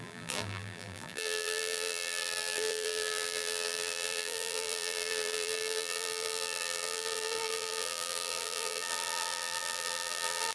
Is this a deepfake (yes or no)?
yes